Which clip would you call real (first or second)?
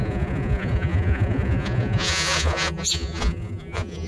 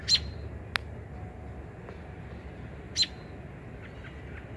second